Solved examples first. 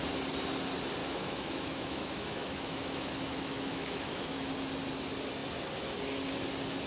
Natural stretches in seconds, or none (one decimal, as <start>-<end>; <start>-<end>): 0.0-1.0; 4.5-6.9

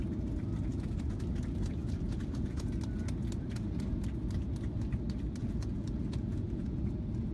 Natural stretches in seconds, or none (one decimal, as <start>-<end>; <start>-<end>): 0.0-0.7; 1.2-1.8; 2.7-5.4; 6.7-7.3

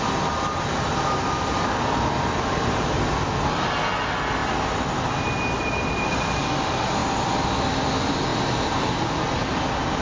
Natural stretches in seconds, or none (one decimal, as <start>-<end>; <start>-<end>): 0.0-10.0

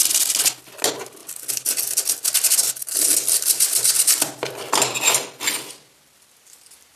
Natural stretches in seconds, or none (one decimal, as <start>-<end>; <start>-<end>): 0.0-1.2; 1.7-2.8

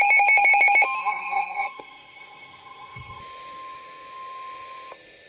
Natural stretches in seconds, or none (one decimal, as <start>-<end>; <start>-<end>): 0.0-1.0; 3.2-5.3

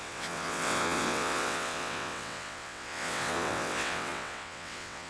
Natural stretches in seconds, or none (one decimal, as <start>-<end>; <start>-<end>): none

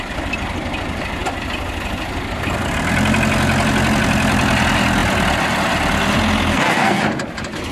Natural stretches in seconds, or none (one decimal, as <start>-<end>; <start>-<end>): 0.0-6.5; 7.0-7.7

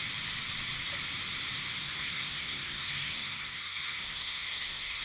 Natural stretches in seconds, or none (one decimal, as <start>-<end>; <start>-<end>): 0.0-1.8